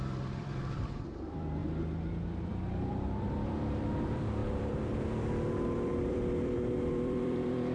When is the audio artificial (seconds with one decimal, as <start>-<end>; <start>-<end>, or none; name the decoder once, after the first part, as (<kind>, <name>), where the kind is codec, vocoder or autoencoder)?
0.0-1.6 (vocoder, BigVGAN v2); 2.9-7.7